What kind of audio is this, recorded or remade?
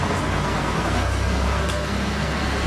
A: remade